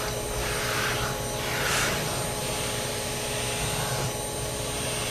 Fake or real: real